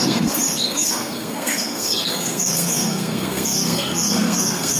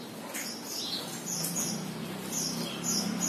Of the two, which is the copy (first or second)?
first